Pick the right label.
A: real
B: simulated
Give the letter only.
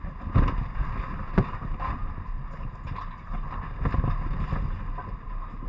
A